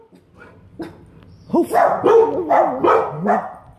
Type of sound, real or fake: real